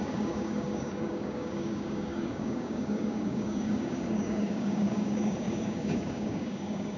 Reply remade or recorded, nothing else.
remade